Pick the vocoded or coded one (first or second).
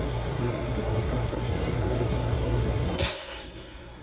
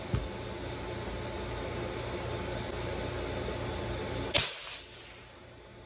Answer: first